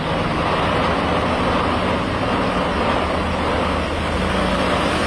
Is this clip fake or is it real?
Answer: real